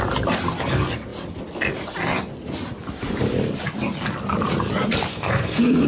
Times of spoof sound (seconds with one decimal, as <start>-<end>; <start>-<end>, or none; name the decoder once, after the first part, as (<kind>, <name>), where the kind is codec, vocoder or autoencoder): 5.1-5.9 (codec, SNAC)